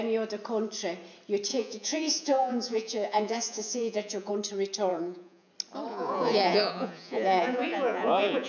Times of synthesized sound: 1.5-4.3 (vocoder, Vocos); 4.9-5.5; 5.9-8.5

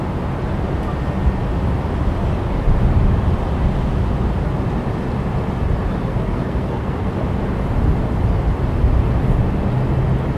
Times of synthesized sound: 6.0-7.1 (codec, SNAC)